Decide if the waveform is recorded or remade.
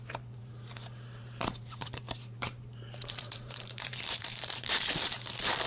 remade